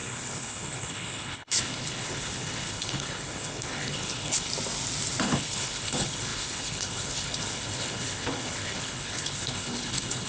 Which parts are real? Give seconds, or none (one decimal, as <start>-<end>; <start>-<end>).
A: 4.5-5.2